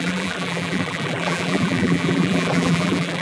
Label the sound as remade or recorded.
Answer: remade